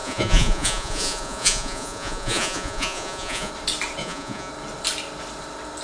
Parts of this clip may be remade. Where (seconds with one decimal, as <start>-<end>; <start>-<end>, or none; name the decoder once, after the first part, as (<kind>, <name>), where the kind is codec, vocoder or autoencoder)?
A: 0.0-3.5 (vocoder, Vocos); 4.0-4.5